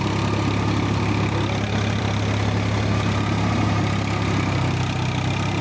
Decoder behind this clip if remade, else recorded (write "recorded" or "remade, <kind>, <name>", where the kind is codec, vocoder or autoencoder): recorded